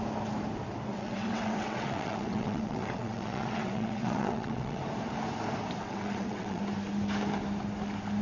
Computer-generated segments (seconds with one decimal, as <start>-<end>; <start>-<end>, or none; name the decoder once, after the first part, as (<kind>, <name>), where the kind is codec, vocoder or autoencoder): 0.9-4.8 (vocoder, WaveNeXt); 5.8-6.6